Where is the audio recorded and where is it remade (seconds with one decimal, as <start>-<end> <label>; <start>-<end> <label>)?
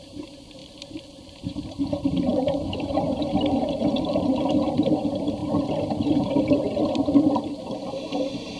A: 0.0-0.6 remade; 0.6-1.2 recorded; 1.2-5.4 remade; 5.4-7.2 recorded; 7.2-8.6 remade